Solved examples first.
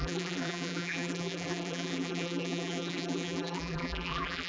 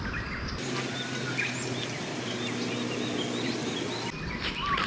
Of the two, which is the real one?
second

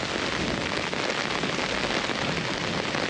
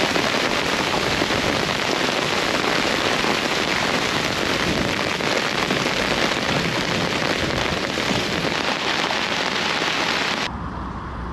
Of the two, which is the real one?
first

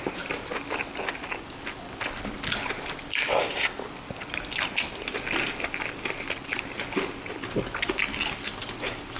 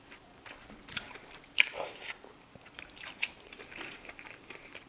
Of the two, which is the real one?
first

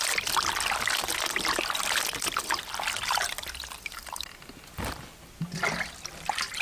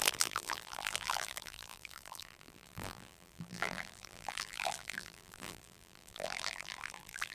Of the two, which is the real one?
first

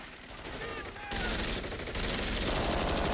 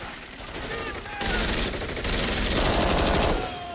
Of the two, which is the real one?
first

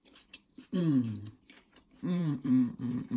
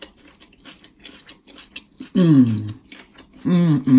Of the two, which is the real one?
second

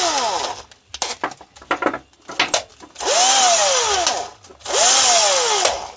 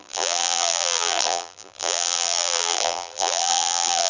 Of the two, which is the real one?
first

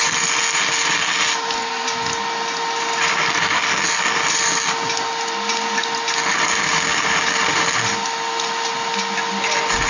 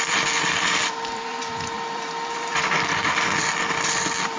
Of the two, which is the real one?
first